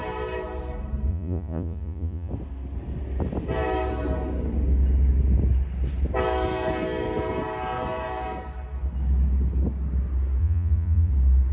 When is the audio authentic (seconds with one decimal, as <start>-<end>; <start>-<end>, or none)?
0.0-1.1; 2.3-10.4; 11.1-11.5